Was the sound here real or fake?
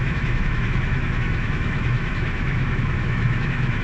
fake